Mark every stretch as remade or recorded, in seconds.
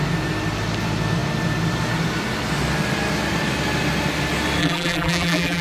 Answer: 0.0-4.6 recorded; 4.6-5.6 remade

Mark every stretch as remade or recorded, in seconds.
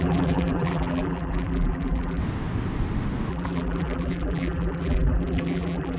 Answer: 0.0-2.2 remade; 2.2-3.3 recorded; 3.3-6.0 remade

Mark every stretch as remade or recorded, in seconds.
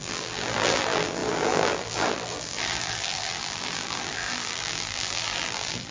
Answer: 0.0-5.9 remade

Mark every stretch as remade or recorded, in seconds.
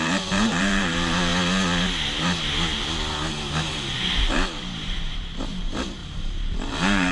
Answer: 0.0-1.3 remade; 1.3-3.7 recorded; 3.7-7.1 remade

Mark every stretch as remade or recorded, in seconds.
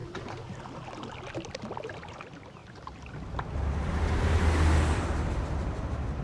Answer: 0.0-0.6 remade; 0.6-6.2 recorded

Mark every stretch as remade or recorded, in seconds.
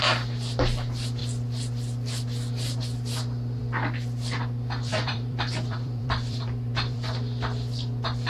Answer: 0.0-4.9 recorded; 4.9-7.1 remade; 7.1-8.3 recorded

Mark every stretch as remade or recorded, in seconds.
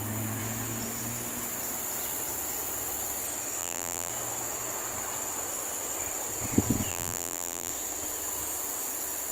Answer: 0.0-3.6 recorded; 3.6-4.1 remade; 4.1-6.9 recorded; 6.9-7.7 remade; 7.7-9.3 recorded